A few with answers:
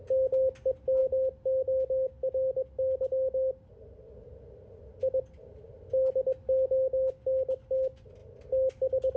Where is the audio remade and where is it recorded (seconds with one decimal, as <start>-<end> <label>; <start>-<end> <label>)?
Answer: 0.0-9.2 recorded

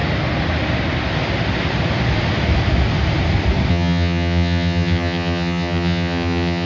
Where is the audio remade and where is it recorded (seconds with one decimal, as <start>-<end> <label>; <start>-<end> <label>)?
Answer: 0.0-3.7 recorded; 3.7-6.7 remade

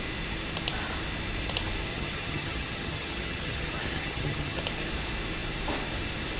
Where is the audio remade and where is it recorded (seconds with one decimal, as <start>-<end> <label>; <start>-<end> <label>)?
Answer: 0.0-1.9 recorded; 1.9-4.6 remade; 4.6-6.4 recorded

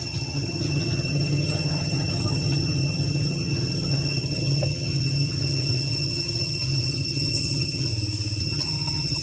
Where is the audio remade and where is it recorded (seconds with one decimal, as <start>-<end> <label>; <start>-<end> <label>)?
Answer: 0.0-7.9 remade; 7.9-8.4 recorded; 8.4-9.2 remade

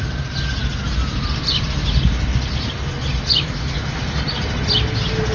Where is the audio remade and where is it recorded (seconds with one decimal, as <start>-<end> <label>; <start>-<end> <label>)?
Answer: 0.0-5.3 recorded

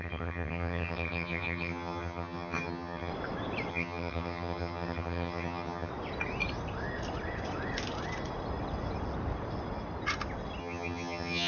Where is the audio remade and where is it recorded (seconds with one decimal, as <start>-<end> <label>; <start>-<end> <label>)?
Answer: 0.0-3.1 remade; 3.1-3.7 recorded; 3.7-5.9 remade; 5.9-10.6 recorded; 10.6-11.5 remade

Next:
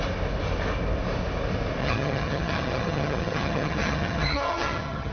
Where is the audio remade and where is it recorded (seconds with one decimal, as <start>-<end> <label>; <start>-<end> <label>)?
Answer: 0.0-1.8 recorded; 1.8-5.1 remade

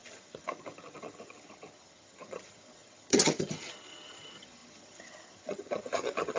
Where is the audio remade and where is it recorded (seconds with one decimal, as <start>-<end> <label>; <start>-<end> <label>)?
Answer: 0.0-6.4 remade